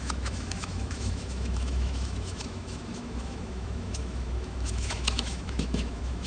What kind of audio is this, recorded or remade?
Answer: remade